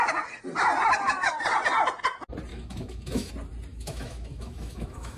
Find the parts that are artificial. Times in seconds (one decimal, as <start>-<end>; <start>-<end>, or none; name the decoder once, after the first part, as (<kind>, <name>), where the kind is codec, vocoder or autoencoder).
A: 2.5-3.3 (autoencoder, DAC-VAE); 3.7-5.2